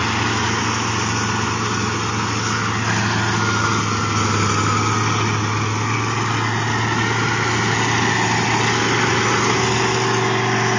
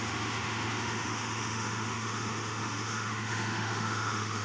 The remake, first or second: second